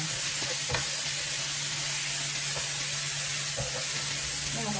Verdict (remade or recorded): recorded